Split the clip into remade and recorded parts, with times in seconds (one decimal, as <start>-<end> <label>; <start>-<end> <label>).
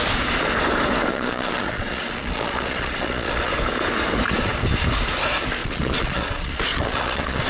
0.0-1.1 recorded; 1.1-3.5 remade; 3.5-5.6 recorded; 5.6-7.5 remade